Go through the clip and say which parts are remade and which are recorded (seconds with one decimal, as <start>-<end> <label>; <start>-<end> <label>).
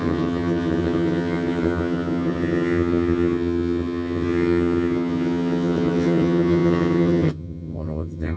0.0-8.4 remade